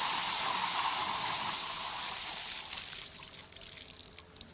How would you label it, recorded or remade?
recorded